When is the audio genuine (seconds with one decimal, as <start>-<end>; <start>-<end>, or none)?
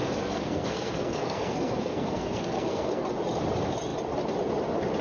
3.0-5.0